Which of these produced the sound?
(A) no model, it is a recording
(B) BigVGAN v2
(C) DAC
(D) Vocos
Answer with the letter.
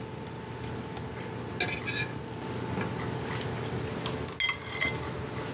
A